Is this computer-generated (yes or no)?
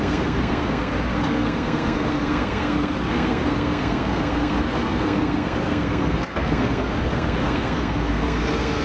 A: yes